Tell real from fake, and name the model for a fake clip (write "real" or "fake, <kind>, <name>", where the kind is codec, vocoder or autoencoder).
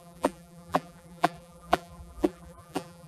fake, vocoder, BigVGAN v2